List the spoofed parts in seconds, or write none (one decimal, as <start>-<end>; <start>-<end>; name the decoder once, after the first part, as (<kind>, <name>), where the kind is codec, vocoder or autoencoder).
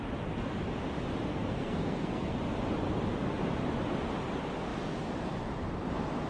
1.3-2.4 (codec, SNAC)